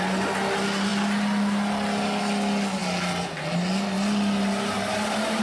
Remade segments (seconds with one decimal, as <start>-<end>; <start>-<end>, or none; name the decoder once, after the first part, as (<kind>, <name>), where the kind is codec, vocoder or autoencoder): none